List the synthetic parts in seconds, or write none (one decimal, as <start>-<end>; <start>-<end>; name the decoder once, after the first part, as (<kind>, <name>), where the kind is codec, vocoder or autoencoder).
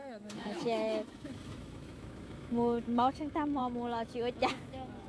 0.0-5.1 (autoencoder, DAC-VAE)